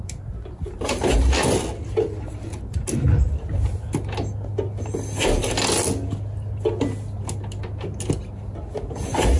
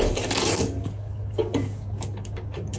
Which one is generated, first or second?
second